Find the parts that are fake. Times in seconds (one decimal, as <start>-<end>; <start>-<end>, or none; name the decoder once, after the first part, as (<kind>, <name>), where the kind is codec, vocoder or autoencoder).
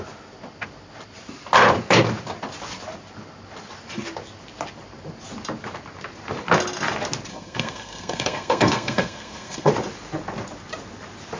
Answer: 7.3-9.7 (codec, SNAC)